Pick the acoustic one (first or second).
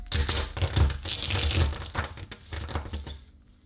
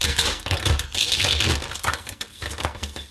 first